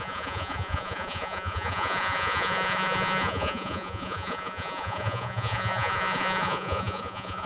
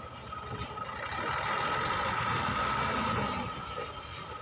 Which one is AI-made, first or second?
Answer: first